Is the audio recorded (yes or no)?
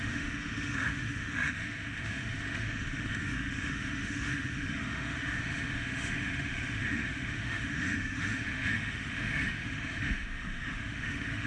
no